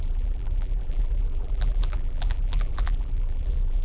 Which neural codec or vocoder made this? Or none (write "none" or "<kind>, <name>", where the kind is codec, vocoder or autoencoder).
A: vocoder, BigVGAN v2